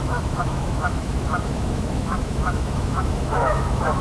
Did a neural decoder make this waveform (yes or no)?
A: yes